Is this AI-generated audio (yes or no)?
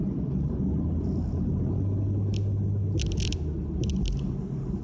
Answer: no